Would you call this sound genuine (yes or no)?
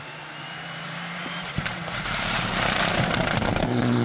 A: no